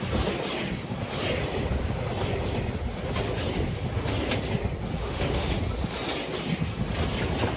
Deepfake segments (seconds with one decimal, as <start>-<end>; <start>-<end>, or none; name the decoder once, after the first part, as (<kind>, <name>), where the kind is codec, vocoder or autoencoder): 5.0-5.5 (autoencoder, DAC-VAE)